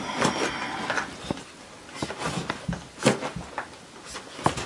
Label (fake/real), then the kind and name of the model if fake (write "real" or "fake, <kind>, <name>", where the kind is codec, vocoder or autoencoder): real